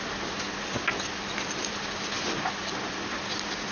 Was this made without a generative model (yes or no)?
yes